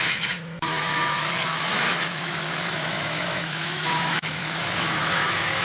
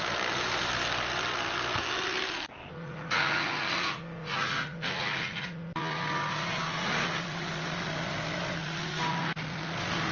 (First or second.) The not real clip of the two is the first